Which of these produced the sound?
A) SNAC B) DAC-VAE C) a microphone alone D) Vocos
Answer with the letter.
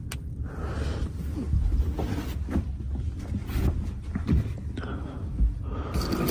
C